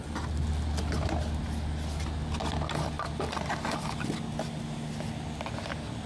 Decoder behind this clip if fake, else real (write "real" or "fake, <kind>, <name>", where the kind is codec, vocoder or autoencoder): real